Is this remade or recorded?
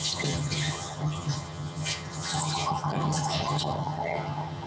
remade